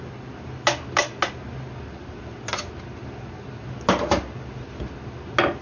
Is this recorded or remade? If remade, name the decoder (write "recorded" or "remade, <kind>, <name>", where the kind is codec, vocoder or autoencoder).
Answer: recorded